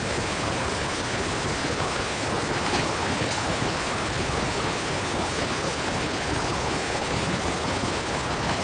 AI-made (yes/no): yes